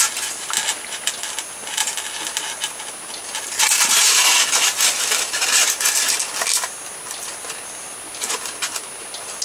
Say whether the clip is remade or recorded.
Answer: recorded